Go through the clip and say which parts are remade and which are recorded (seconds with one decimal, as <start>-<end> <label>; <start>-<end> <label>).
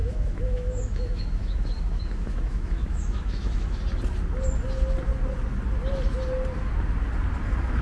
0.0-3.8 remade; 3.8-7.8 recorded